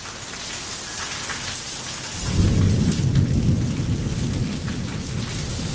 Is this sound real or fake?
real